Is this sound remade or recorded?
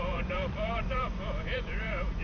remade